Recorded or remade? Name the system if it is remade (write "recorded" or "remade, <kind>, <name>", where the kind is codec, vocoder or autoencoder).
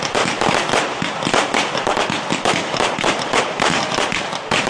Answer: remade, vocoder, BigVGAN v2